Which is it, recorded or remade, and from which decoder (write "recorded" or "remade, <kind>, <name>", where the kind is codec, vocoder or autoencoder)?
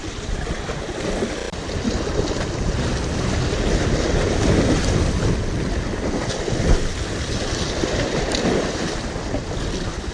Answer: recorded